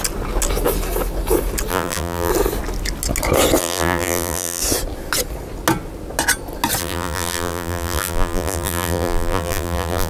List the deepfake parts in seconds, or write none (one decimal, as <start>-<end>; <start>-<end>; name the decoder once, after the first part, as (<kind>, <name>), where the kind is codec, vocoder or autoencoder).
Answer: 1.7-2.3 (vocoder, BigVGAN v2); 3.6-4.6; 6.8-10.1